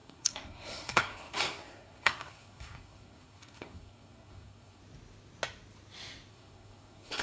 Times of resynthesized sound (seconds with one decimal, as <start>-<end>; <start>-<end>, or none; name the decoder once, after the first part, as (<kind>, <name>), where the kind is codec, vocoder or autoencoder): 0.0-4.8 (codec, SNAC); 6.3-7.2